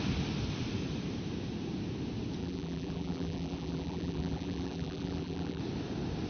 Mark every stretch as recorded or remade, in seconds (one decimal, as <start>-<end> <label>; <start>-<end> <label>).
0.0-2.4 recorded; 2.4-5.6 remade; 5.6-6.3 recorded

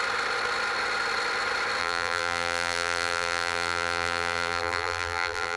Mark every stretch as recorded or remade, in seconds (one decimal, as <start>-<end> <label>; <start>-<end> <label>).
0.0-1.8 recorded; 1.8-5.6 remade